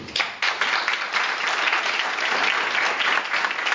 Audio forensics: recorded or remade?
recorded